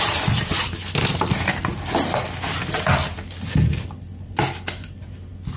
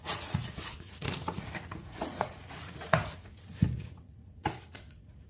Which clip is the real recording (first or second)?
first